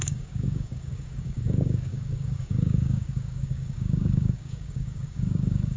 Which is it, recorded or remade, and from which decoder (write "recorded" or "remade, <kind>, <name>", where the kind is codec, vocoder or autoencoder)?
remade, codec, DAC